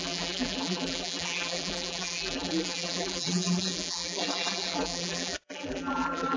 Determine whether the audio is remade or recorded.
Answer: remade